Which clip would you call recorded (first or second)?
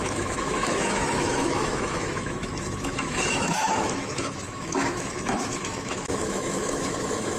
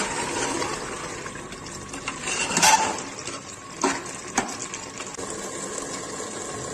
second